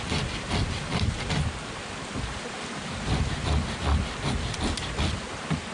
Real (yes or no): yes